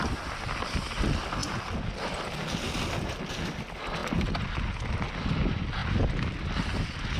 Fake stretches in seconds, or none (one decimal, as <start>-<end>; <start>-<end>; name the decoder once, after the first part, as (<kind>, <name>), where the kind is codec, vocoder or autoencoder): none